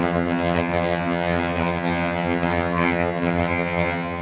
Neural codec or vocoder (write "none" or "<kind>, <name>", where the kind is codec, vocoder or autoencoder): vocoder, HiFi-GAN